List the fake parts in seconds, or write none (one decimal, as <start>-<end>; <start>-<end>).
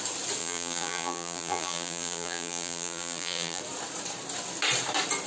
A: 0.4-3.6